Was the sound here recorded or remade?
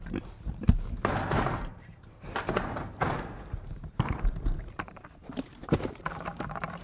remade